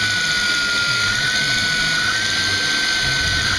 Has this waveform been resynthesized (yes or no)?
no